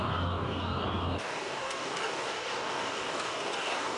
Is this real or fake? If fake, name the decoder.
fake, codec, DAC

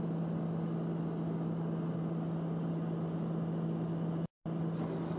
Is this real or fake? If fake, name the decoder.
real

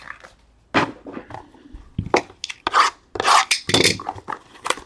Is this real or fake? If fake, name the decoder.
real